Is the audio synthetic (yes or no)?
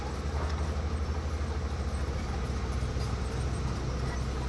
no